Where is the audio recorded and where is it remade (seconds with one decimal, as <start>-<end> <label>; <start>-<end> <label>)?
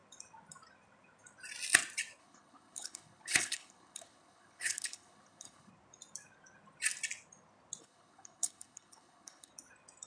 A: 0.0-2.2 recorded; 2.2-5.7 remade; 5.7-7.8 recorded; 7.8-9.5 remade; 9.5-10.1 recorded